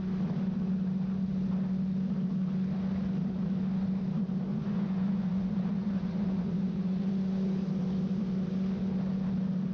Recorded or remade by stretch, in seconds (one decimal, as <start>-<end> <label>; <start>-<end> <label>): 0.0-4.5 recorded; 4.5-7.1 remade; 7.1-9.7 recorded